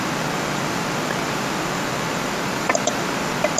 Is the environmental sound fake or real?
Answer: fake